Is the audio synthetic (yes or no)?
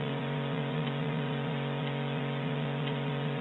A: yes